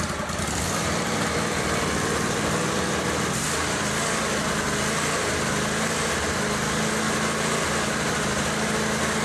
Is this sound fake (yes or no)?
no